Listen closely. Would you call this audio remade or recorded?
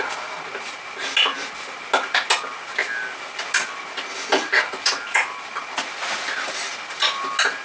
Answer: recorded